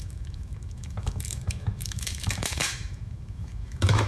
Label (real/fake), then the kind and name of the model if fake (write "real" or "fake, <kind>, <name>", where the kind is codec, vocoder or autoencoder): fake, autoencoder, DAC-VAE